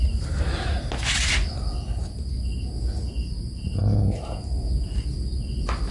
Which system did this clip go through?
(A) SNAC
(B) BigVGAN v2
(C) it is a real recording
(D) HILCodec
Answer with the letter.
C